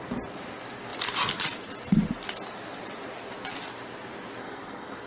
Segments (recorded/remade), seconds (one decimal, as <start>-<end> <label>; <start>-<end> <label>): 0.0-4.4 recorded; 4.4-5.1 remade